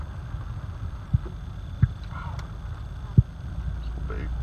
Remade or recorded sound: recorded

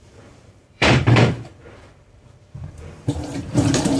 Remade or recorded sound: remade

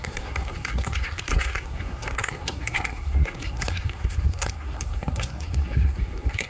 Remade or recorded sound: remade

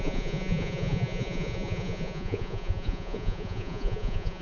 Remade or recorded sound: remade